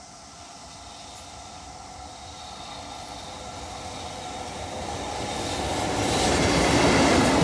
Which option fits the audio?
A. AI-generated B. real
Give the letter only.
B